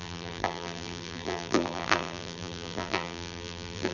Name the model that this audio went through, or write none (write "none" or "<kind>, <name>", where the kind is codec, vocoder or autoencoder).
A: vocoder, BigVGAN v2